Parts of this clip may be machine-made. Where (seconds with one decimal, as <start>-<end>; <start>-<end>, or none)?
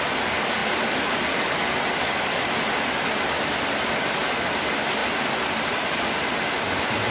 none